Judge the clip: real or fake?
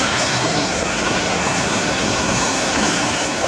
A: fake